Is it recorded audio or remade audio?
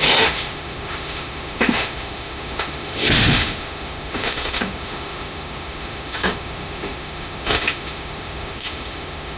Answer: remade